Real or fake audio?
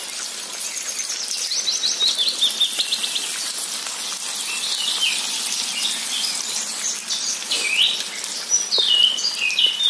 real